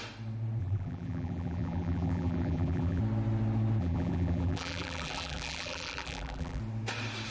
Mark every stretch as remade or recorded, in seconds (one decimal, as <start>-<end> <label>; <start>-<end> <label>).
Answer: 0.0-0.6 recorded; 0.6-3.0 remade; 3.0-3.8 recorded; 3.8-6.6 remade; 6.6-7.3 recorded